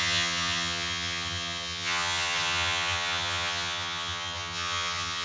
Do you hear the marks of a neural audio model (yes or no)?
yes